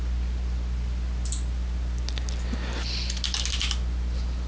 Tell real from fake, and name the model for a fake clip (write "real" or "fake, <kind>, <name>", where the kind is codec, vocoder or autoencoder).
real